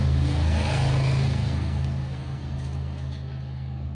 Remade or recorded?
remade